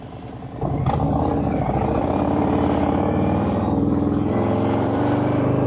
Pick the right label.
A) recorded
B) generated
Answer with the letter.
B